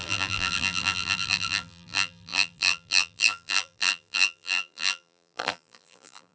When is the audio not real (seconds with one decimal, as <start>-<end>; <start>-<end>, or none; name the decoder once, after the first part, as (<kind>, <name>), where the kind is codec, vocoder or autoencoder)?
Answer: 0.0-6.3 (vocoder, BigVGAN v2)